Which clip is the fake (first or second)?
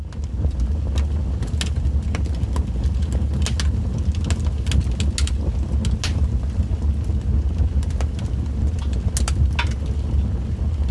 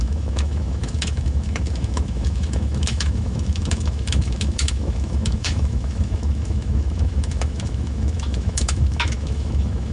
second